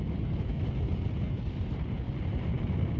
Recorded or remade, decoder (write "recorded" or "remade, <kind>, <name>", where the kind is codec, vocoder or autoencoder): recorded